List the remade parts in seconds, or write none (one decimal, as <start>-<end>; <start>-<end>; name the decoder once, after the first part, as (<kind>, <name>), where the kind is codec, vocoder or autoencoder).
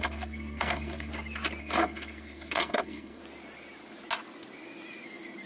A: 0.0-1.1 (codec, SNAC); 1.6-3.2